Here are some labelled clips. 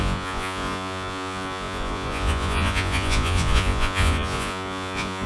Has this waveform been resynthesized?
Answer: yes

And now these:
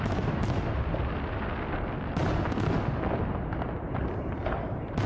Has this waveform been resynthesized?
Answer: no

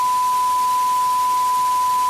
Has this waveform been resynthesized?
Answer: no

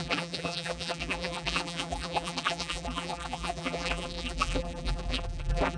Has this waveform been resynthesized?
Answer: yes